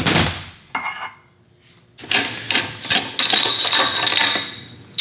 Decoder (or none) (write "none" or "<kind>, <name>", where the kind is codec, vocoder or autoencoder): none